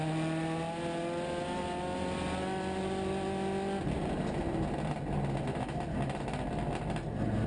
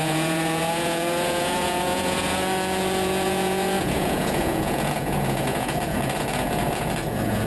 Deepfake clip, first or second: second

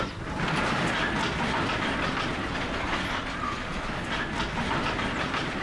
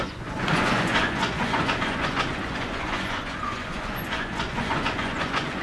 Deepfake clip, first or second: second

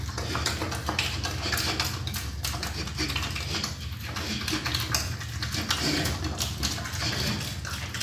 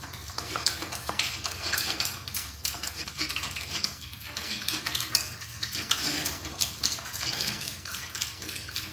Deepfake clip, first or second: second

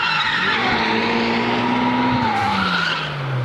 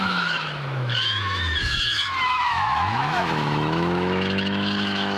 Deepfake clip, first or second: second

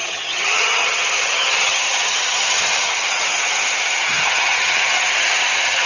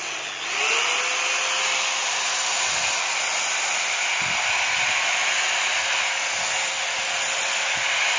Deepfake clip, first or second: first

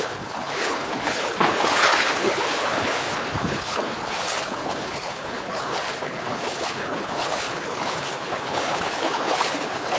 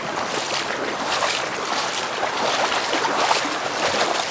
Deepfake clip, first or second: first